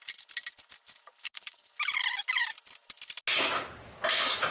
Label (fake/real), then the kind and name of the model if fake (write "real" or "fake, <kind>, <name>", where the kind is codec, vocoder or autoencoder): real